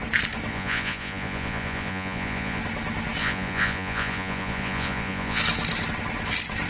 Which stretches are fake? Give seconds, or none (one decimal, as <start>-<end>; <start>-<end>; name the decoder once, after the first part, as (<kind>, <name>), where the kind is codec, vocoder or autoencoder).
0.5-2.6 (vocoder, Vocos); 3.2-5.4